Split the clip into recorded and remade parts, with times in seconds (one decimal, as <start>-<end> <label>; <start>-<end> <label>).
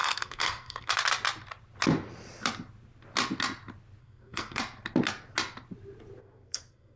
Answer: 0.0-0.9 remade; 0.9-4.0 recorded; 4.0-4.6 remade; 4.6-6.2 recorded; 6.2-7.0 remade